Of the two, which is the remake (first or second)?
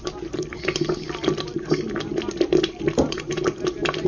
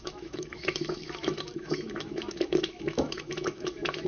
second